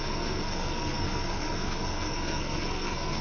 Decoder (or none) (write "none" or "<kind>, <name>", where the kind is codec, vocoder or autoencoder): codec, SNAC